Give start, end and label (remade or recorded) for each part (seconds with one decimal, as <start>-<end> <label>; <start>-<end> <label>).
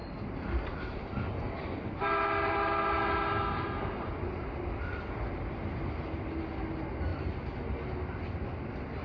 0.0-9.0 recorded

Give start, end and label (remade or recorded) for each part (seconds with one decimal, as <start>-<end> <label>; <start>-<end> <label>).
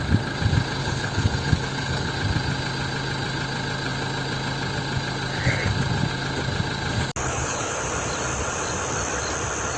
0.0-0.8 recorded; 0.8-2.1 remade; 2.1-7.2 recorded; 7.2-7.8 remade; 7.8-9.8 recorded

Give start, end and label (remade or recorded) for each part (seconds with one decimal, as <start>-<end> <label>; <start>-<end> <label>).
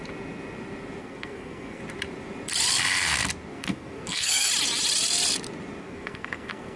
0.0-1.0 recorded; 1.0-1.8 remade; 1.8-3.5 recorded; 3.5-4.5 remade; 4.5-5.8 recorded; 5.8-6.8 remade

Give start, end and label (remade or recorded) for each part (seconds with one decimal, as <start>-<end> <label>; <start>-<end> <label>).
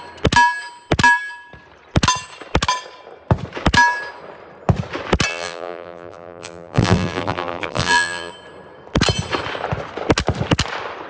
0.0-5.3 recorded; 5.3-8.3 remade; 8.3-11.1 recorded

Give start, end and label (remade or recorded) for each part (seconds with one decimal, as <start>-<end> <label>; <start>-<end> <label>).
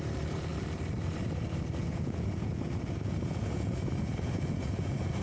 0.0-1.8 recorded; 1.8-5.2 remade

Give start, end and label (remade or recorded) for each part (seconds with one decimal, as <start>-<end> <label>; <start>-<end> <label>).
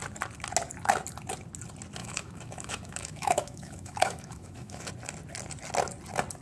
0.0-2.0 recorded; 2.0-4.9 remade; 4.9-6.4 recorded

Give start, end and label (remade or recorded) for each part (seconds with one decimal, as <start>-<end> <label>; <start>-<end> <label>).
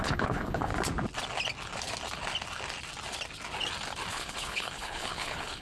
0.0-0.7 remade; 0.7-4.1 recorded; 4.1-5.6 remade